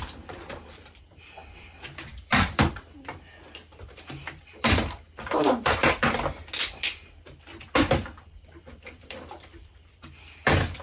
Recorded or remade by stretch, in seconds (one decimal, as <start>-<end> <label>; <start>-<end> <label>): 0.0-5.8 remade; 5.8-8.7 recorded; 8.7-10.8 remade